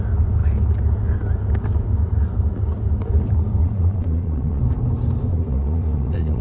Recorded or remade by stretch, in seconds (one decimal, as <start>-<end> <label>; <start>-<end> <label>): 0.0-3.6 recorded; 3.6-4.6 remade; 4.6-5.3 recorded; 5.3-6.4 remade